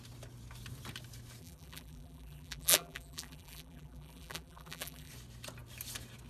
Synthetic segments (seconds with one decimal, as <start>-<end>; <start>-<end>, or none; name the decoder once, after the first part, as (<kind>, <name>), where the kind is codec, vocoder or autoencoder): 1.4-5.1 (vocoder, BigVGAN v2)